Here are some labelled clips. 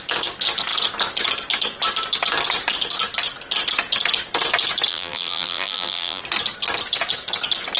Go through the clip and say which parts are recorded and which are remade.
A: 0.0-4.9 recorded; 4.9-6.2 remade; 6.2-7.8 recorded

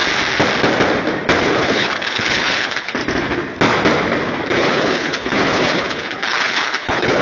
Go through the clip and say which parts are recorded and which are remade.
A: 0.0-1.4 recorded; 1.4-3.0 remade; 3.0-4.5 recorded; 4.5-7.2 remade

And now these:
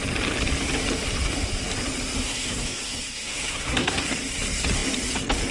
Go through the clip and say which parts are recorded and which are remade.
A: 0.0-2.2 recorded; 2.2-4.1 remade; 4.1-5.5 recorded

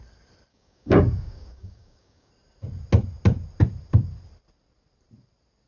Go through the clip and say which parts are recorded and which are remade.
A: 0.0-0.5 recorded; 0.5-2.3 remade; 2.3-5.7 recorded

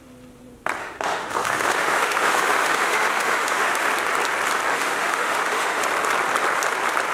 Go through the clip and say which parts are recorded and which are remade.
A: 0.0-0.8 recorded; 0.8-3.9 remade; 3.9-4.7 recorded; 4.7-5.8 remade; 5.8-7.1 recorded

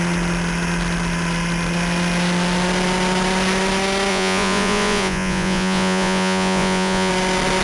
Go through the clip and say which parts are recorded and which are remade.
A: 0.0-4.1 recorded; 4.1-7.1 remade; 7.1-7.6 recorded

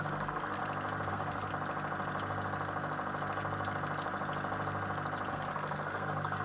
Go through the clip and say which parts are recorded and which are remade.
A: 0.0-0.6 remade; 0.6-1.1 recorded; 1.1-1.5 remade; 1.5-5.3 recorded; 5.3-6.4 remade

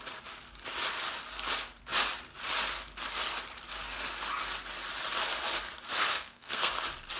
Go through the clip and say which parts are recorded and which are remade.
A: 0.0-6.1 recorded; 6.1-6.7 remade; 6.7-7.2 recorded